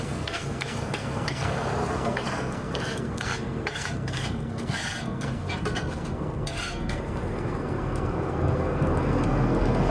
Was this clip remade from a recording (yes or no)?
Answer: yes